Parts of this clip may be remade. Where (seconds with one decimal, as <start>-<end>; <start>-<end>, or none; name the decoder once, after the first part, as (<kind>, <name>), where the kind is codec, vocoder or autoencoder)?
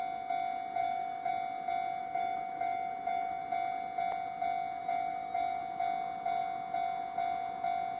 0.8-1.3 (autoencoder, DAC-VAE); 2.0-3.4; 4.8-5.6